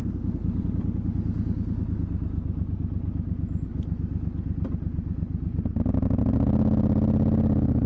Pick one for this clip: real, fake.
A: real